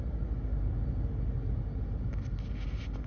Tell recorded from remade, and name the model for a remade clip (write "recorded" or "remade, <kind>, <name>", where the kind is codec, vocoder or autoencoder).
recorded